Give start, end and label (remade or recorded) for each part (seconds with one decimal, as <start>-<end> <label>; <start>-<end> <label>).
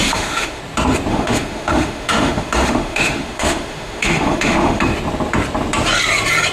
0.0-0.6 remade; 0.6-1.1 recorded; 1.1-4.8 remade; 4.8-6.5 recorded